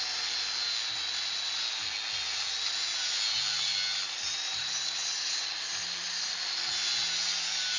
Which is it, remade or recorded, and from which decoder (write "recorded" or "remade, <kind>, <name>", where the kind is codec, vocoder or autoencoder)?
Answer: recorded